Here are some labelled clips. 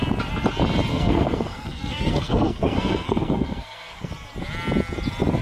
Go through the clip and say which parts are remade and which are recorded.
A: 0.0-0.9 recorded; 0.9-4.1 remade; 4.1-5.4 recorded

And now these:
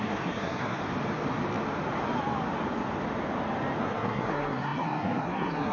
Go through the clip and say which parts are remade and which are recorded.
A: 0.0-0.8 remade; 0.8-3.8 recorded; 3.8-5.7 remade

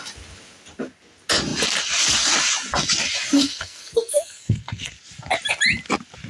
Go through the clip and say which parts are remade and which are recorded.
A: 0.0-3.4 recorded; 3.4-4.9 remade; 4.9-6.3 recorded

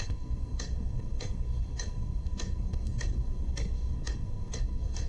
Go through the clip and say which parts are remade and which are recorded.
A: 0.0-5.1 remade